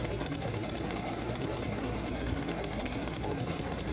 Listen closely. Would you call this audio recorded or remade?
remade